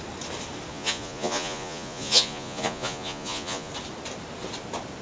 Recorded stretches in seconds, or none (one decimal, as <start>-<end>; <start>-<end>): 0.0-0.7; 3.7-5.0